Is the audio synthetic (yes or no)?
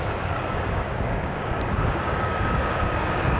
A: yes